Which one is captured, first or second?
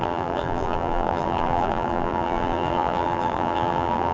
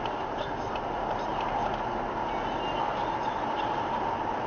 second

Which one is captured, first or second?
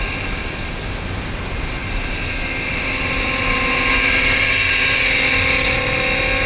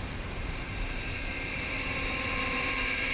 first